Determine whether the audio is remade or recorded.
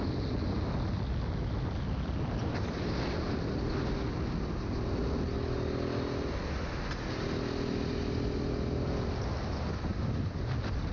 recorded